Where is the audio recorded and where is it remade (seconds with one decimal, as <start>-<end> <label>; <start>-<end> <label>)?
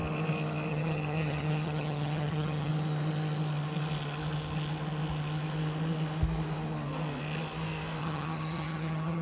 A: 0.0-0.7 recorded; 0.7-2.7 remade; 2.7-8.0 recorded; 8.0-9.2 remade